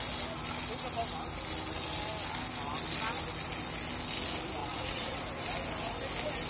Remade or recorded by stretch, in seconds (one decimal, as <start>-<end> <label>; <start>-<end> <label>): 0.0-4.6 recorded; 4.6-5.2 remade; 5.2-6.5 recorded